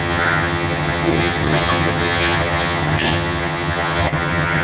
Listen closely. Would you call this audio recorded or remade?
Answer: remade